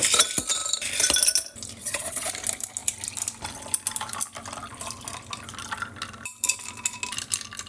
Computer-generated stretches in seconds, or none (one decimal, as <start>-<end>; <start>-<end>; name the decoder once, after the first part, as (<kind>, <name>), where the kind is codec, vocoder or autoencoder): 1.8-2.3 (vocoder, Vocos)